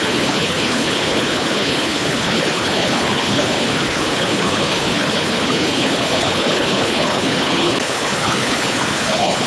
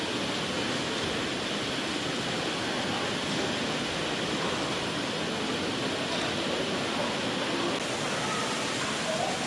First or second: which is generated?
first